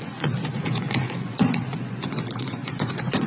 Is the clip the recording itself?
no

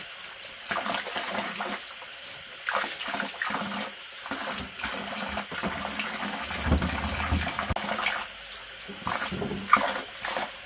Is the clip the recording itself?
yes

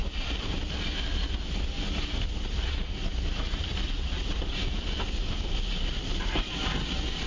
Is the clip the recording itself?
yes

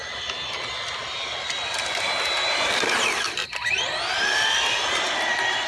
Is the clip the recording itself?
yes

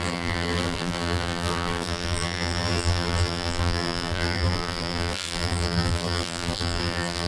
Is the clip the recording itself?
no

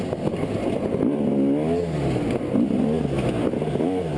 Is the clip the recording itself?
yes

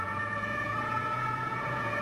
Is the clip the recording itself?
no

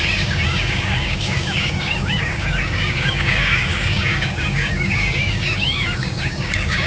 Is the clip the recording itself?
no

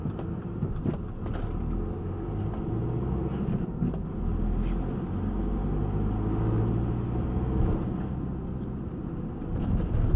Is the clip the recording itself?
yes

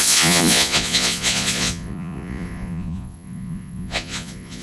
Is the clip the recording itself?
no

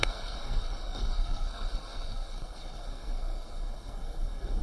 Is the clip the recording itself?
no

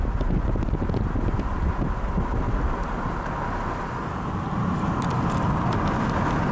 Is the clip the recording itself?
yes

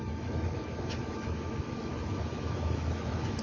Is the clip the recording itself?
no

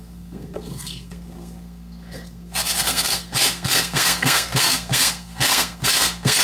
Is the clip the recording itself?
no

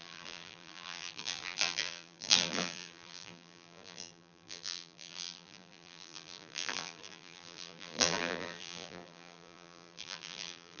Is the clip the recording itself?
no